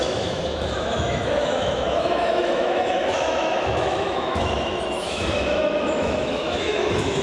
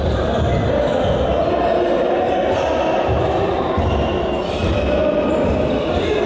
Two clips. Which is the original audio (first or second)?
second